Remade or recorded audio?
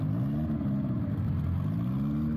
recorded